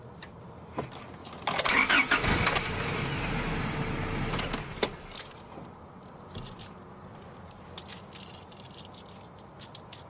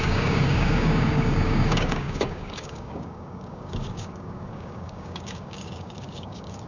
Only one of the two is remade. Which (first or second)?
second